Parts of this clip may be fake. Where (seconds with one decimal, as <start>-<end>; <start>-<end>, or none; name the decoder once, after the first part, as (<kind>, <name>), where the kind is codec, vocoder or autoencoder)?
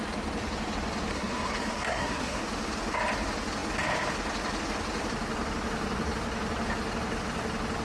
1.1-2.4 (codec, SNAC)